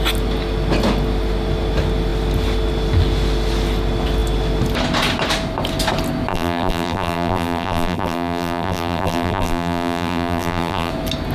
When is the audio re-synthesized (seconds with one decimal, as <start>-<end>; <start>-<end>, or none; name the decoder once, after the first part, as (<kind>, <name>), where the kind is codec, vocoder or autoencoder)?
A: 6.3-10.9 (vocoder, BigVGAN v2)